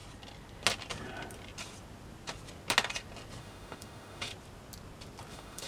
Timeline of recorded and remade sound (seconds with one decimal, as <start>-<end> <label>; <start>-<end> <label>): 0.0-3.4 recorded; 3.4-4.3 remade; 4.3-5.3 recorded; 5.3-5.7 remade